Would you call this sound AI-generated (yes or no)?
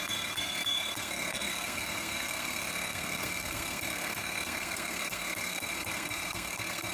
yes